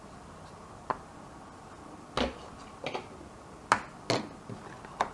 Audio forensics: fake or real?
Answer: real